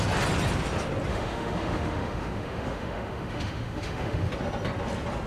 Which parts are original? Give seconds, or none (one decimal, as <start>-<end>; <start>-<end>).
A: 0.0-1.1; 4.3-5.3